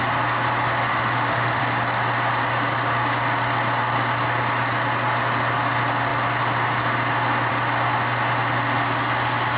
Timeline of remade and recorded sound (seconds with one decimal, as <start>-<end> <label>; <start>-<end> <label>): 0.0-0.9 recorded; 0.9-1.6 remade; 1.6-9.6 recorded

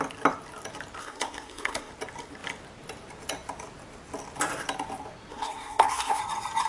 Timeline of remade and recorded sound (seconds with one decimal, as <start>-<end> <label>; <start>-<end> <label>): 0.0-1.0 recorded; 1.0-1.9 remade; 1.9-5.3 recorded; 5.3-6.2 remade; 6.2-6.7 recorded

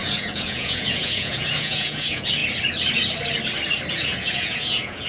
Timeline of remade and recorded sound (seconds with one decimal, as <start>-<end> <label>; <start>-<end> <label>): 0.0-2.4 remade; 2.4-3.9 recorded; 3.9-5.1 remade

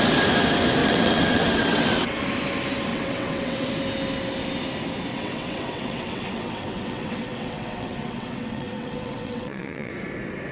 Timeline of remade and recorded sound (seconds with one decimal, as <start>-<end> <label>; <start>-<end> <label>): 0.0-0.8 recorded; 0.8-2.2 remade; 2.2-2.9 recorded; 2.9-3.7 remade; 3.7-5.1 recorded; 5.1-9.9 remade; 9.9-10.5 recorded

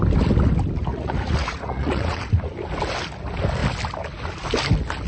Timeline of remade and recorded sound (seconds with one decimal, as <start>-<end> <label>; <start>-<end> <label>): 0.0-0.9 recorded; 0.9-2.5 remade; 2.5-5.1 recorded

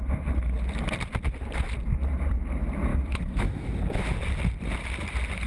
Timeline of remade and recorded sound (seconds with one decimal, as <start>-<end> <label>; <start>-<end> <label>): 0.0-2.9 recorded; 2.9-3.7 remade; 3.7-5.5 recorded

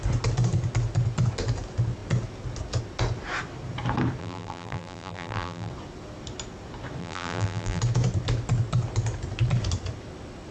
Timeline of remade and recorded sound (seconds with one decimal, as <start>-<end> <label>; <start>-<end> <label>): 0.0-4.2 recorded; 4.2-5.7 remade; 5.7-7.0 recorded; 7.0-7.8 remade; 7.8-10.5 recorded

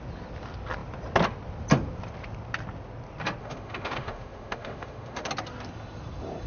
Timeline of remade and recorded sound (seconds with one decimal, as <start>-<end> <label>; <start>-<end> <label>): 0.0-3.4 recorded; 3.4-5.3 remade; 5.3-6.5 recorded